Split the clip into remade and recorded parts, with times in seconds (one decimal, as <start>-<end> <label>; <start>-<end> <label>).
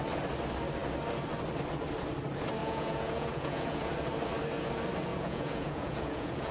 0.0-2.6 recorded; 2.6-3.9 remade; 3.9-5.1 recorded; 5.1-6.5 remade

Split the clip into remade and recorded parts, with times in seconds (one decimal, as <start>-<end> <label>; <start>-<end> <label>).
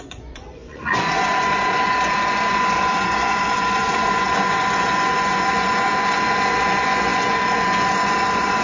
0.0-8.6 remade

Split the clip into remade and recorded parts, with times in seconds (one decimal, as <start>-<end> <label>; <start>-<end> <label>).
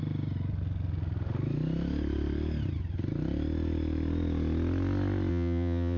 0.0-5.3 recorded; 5.3-6.0 remade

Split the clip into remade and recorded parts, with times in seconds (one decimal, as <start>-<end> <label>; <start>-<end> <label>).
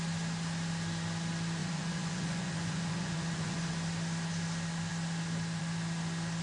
0.0-1.6 recorded; 1.6-3.7 remade; 3.7-6.4 recorded